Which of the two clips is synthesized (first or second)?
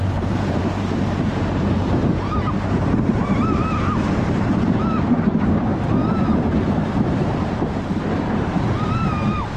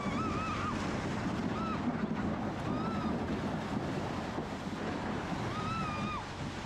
first